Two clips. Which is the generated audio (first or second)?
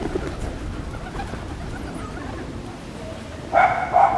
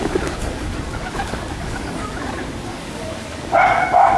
second